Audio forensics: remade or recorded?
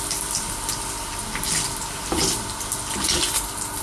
recorded